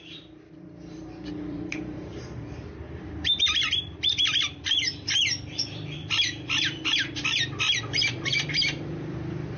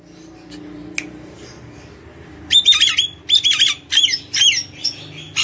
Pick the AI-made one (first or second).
first